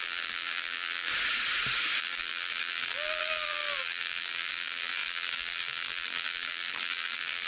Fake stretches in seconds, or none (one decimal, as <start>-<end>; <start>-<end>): 0.0-1.1; 2.0-7.5